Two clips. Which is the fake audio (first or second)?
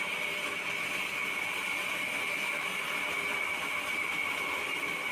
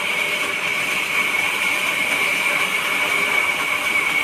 second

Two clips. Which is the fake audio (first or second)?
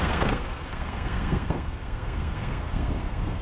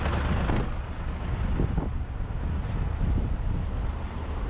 first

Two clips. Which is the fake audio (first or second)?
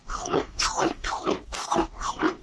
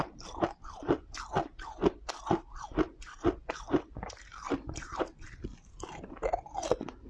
first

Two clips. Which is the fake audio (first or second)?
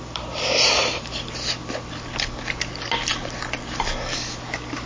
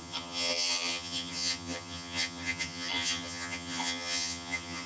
second